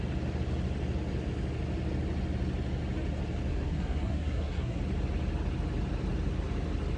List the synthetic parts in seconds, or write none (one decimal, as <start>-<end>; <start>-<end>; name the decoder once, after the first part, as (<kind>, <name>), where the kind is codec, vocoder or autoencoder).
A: 3.5-4.8 (codec, SNAC)